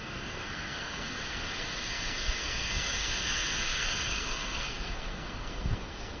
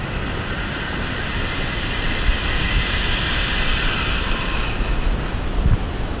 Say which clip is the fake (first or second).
first